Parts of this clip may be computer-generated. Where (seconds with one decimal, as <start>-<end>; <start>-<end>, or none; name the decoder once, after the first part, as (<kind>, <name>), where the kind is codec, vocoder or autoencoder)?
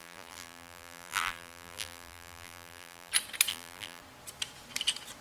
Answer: 0.0-3.1 (vocoder, BigVGAN v2); 3.5-4.0